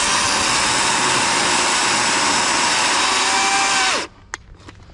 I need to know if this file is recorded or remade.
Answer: recorded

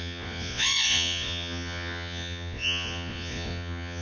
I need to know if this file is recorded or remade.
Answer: remade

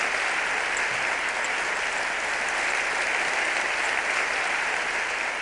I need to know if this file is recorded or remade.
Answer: recorded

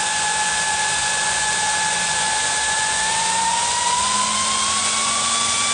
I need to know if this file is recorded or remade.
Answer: remade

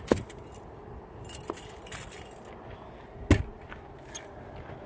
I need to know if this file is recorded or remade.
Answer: recorded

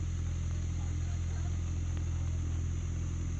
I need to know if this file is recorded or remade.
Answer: recorded